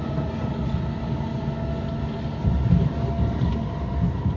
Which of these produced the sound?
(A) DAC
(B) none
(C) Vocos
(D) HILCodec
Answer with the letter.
B